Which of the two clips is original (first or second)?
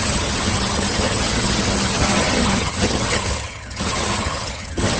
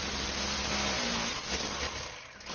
second